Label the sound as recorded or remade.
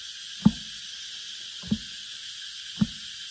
recorded